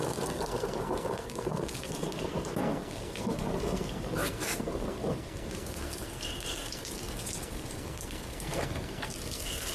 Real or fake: fake